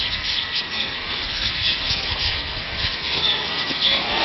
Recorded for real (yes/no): no